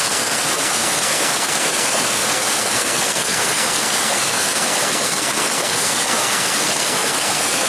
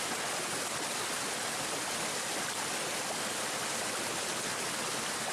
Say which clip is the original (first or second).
second